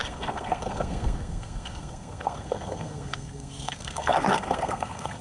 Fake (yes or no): yes